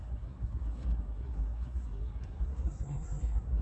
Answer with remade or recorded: remade